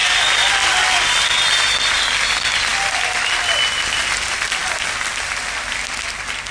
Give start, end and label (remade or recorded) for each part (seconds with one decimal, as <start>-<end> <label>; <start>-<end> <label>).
0.0-6.5 recorded